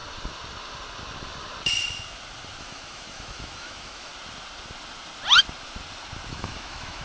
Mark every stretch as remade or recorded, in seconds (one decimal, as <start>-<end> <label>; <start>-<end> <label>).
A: 0.0-2.6 recorded; 2.6-4.1 remade; 4.1-6.3 recorded; 6.3-7.0 remade